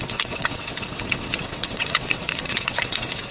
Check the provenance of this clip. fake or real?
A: fake